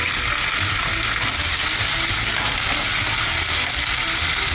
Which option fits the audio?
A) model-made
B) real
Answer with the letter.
B